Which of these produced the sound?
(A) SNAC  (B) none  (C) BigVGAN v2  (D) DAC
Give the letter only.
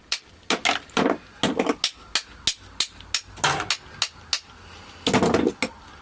B